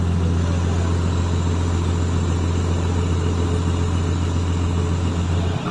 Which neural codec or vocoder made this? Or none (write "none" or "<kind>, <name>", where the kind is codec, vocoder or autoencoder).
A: none